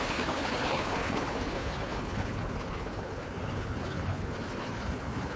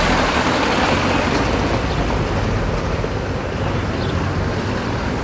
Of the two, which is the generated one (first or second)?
first